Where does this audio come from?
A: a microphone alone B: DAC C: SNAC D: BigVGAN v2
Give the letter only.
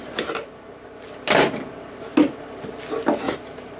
A